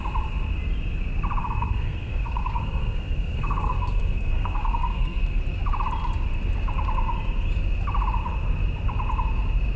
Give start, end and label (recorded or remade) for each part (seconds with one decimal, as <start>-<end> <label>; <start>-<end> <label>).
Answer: 0.0-1.4 recorded; 1.4-5.4 remade; 5.4-9.8 recorded